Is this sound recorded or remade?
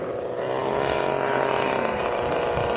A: recorded